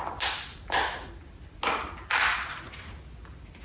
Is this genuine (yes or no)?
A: yes